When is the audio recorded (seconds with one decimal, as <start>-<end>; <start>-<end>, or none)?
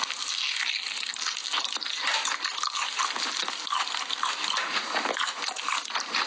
0.0-6.3